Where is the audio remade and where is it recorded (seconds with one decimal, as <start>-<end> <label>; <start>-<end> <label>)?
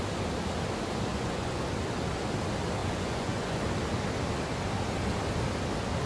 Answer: 0.0-1.1 recorded; 1.1-1.6 remade; 1.6-2.8 recorded; 2.8-3.6 remade; 3.6-6.1 recorded